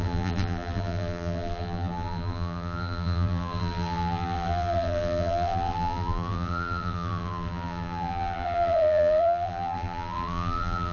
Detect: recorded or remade remade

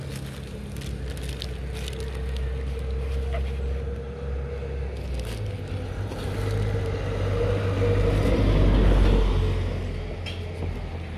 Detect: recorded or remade recorded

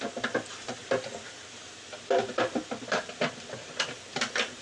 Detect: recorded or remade remade